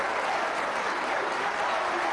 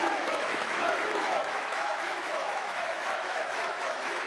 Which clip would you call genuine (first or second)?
first